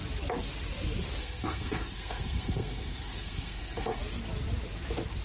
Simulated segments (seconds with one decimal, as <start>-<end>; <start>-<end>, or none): 1.2-4.0